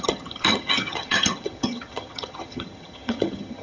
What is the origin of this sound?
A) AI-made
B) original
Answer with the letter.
A